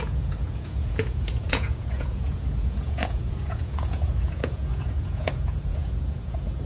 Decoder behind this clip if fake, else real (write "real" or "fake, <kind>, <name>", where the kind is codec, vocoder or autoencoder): fake, vocoder, Vocos